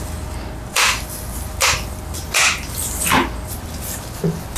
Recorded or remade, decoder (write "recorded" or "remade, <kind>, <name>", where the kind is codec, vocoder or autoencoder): recorded